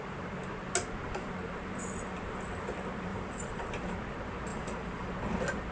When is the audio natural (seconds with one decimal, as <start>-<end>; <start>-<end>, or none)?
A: 0.0-3.1; 3.8-4.5; 5.1-5.7